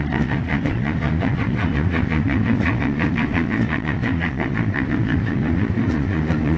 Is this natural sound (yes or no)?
no